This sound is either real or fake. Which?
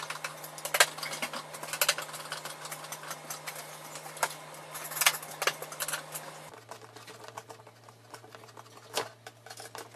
real